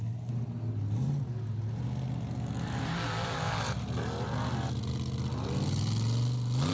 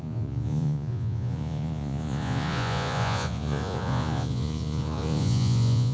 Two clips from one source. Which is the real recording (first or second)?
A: first